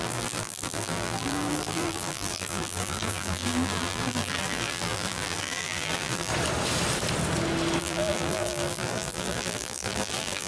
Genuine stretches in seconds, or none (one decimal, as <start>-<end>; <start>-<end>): 6.3-7.8